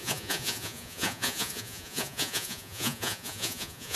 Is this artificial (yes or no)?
yes